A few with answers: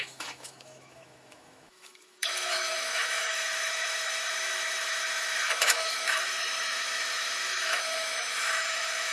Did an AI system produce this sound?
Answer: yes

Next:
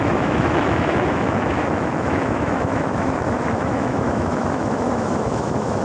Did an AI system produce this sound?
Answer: yes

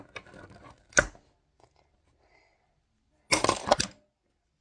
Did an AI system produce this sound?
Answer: no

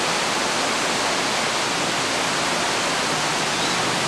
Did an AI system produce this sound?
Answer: no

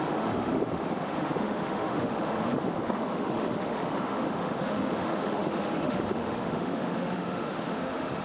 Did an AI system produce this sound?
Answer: yes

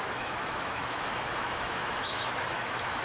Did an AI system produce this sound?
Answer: yes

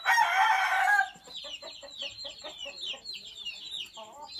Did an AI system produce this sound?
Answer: no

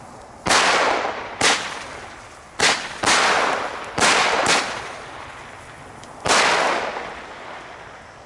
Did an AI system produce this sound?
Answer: no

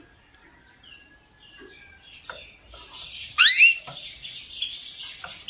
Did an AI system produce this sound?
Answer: no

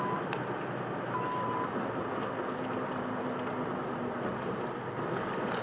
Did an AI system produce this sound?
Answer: no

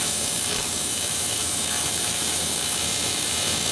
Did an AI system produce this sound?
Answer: yes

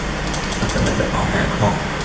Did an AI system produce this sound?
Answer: no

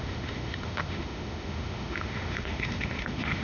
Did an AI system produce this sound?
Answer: yes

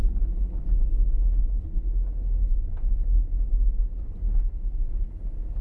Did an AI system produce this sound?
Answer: no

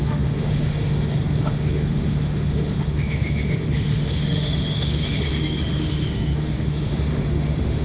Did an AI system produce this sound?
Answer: yes